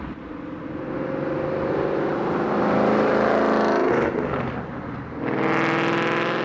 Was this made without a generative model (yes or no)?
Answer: yes